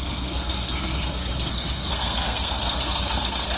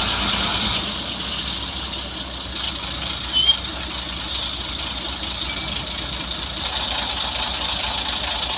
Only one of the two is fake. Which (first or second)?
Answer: first